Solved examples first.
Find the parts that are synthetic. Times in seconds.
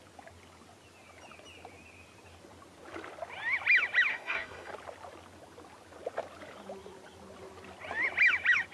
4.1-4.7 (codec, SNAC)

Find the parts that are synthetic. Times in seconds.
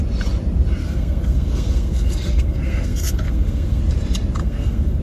0.8-3.8 (codec, SNAC); 4.4-5.0